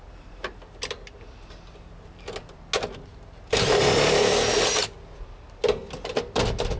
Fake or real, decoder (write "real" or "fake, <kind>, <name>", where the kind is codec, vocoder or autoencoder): real